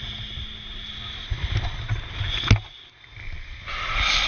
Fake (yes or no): no